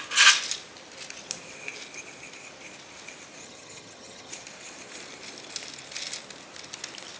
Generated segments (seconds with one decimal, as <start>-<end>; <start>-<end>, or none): 3.4-4.3